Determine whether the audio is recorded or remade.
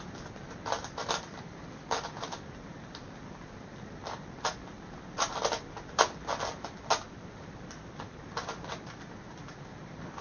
recorded